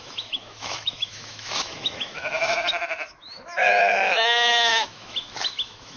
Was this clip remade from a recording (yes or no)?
yes